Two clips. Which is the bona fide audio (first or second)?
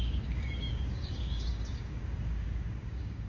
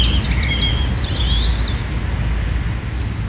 second